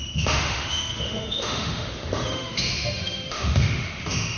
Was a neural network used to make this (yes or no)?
yes